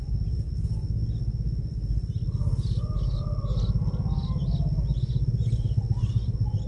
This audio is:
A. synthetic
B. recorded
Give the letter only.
B